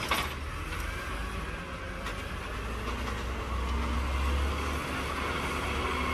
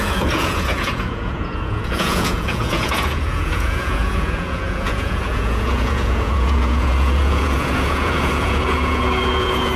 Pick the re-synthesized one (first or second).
second